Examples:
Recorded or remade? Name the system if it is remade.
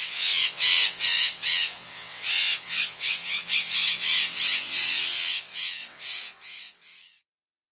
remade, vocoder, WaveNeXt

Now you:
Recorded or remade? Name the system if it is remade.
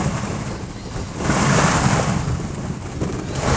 recorded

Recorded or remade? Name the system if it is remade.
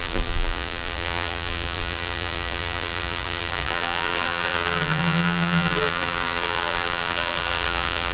remade, vocoder, BigVGAN v2